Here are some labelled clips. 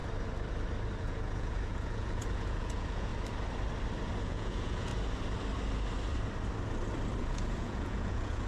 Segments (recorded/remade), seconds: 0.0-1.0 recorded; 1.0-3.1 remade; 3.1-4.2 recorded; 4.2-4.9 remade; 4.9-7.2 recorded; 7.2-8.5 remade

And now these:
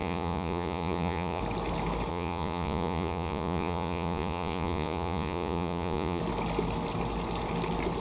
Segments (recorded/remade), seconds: 0.0-1.4 remade; 1.4-2.1 recorded; 2.1-6.2 remade; 6.2-8.0 recorded

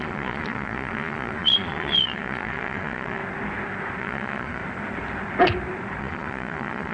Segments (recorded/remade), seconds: 0.0-3.2 remade; 3.2-4.0 recorded; 4.0-4.6 remade; 4.6-6.0 recorded; 6.0-6.9 remade